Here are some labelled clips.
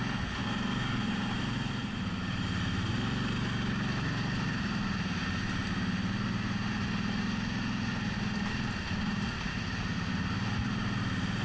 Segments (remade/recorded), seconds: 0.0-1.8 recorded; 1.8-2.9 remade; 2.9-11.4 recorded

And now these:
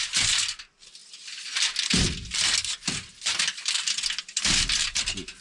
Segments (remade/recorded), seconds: 0.0-5.4 recorded

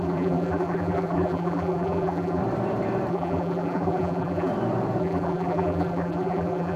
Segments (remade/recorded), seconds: 0.0-2.4 remade; 2.4-3.1 recorded; 3.1-4.5 remade; 4.5-5.0 recorded; 5.0-6.8 remade

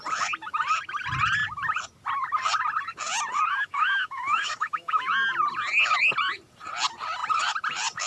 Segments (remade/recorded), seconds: 0.0-3.5 recorded; 3.5-5.1 remade; 5.1-8.1 recorded